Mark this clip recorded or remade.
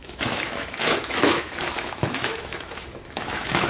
remade